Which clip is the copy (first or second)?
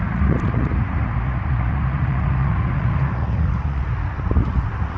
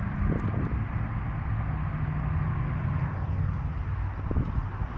first